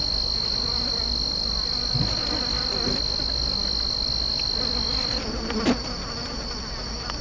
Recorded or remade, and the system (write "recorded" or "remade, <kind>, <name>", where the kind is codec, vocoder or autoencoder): recorded